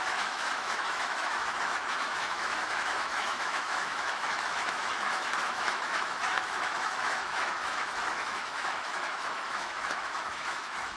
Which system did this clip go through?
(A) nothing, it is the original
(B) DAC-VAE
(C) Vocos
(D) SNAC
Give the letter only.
B